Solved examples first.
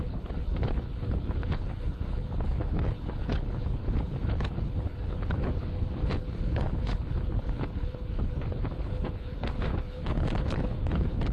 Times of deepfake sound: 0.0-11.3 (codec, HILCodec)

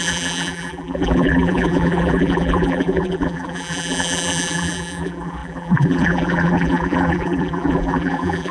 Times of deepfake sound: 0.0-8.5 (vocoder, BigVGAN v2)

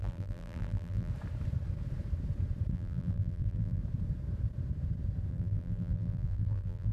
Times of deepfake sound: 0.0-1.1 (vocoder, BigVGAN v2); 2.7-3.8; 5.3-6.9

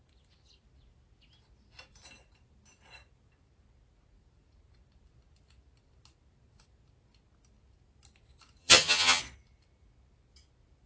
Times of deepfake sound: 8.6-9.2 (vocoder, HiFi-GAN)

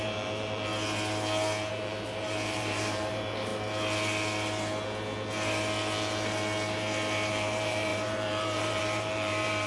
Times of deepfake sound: 0.0-0.7 (vocoder, BigVGAN v2); 1.7-3.5; 7.3-9.7

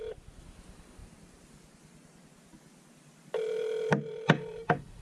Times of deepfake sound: 0.0-1.0 (vocoder, BigVGAN v2); 4.0-5.0

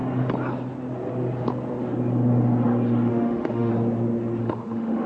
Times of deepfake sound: 3.1-3.7 (autoencoder, DAC-VAE); 4.4-5.1